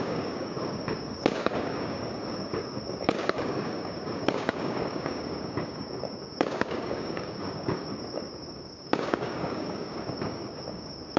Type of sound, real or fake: fake